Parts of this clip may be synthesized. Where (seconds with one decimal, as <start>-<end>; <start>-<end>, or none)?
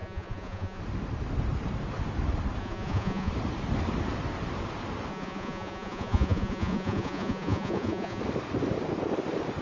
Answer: 0.0-0.8; 2.6-3.3; 5.1-8.2